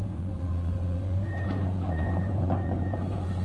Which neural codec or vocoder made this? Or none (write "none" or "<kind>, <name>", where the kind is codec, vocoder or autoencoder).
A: vocoder, Vocos